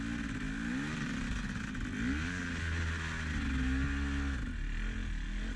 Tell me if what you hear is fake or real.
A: real